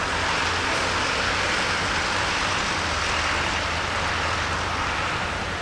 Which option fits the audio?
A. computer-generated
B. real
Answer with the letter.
B